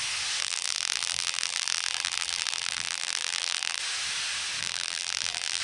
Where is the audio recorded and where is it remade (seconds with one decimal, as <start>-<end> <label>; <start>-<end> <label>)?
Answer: 0.0-0.4 recorded; 0.4-3.8 remade; 3.8-4.6 recorded; 4.6-5.6 remade